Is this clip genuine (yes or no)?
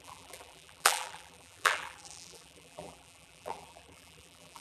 no